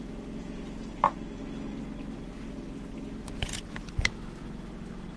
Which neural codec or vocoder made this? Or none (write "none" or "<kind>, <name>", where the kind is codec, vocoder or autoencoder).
none